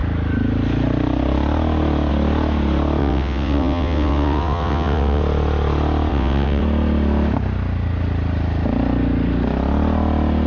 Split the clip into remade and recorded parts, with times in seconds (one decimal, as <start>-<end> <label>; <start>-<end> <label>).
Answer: 0.0-3.0 recorded; 3.0-5.2 remade; 5.2-6.1 recorded; 6.1-6.6 remade; 6.6-10.5 recorded

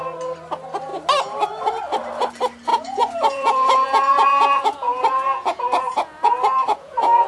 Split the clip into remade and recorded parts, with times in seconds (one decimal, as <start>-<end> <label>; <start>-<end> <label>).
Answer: 0.0-2.7 recorded; 2.7-7.3 remade

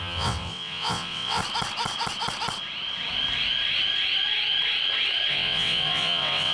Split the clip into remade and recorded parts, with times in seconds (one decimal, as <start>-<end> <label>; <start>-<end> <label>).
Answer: 0.0-1.4 remade; 1.4-5.3 recorded; 5.3-6.5 remade

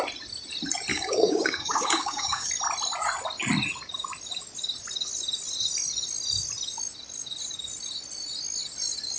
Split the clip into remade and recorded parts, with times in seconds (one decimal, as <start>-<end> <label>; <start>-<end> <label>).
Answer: 0.0-0.9 recorded; 0.9-2.5 remade; 2.5-9.2 recorded